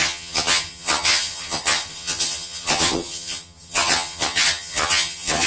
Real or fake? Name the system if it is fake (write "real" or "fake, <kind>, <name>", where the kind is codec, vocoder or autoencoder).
fake, vocoder, HiFi-GAN